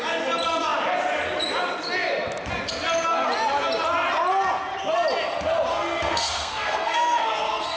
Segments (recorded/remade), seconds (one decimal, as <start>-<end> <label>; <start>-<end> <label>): 0.0-5.7 recorded; 5.7-7.8 remade